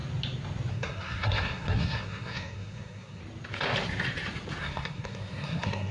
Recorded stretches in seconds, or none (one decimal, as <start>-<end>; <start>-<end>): 0.0-0.7; 3.2-4.6